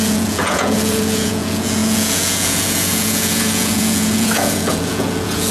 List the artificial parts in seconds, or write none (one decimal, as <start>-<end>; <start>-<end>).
0.0-5.5